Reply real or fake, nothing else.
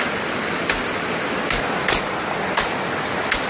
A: real